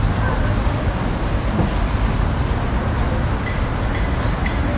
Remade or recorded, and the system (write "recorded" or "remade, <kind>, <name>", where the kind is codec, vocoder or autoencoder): recorded